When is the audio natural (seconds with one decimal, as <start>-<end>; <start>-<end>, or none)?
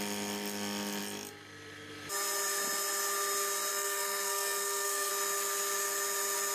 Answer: 0.0-3.7; 5.1-6.5